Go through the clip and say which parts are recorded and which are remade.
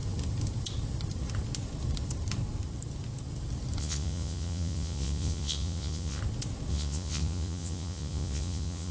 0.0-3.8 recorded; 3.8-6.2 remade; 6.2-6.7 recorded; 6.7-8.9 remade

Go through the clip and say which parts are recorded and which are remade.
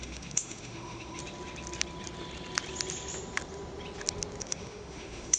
0.0-1.2 remade; 1.2-4.4 recorded; 4.4-5.4 remade